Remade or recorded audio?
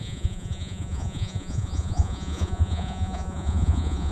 remade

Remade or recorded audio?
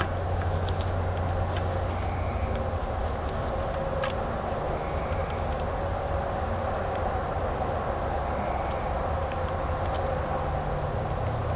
recorded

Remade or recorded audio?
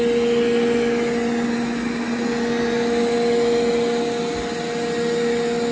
recorded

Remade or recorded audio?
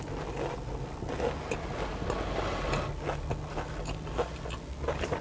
recorded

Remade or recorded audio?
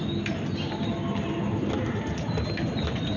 recorded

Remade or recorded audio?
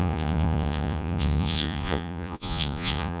remade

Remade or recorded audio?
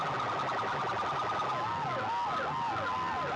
recorded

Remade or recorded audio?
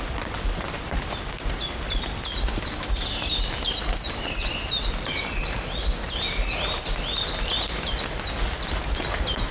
recorded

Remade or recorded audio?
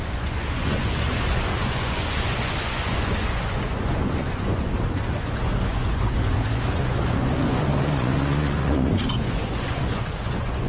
remade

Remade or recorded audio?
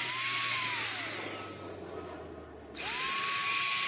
recorded